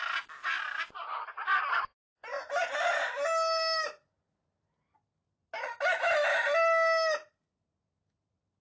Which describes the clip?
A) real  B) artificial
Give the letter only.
A